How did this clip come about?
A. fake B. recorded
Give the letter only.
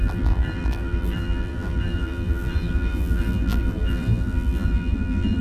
A